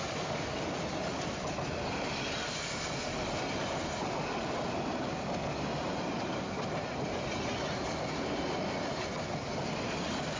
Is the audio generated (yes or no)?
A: no